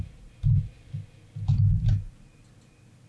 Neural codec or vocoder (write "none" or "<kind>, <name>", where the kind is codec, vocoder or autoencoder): none